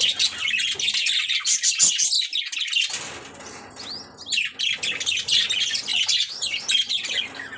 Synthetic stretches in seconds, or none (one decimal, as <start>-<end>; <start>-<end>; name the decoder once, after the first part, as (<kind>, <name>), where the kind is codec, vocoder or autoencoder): 5.9-6.9 (vocoder, BigVGAN v2)